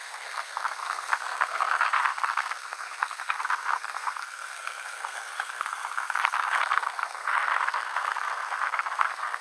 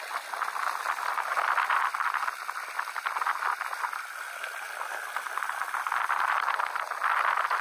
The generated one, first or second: first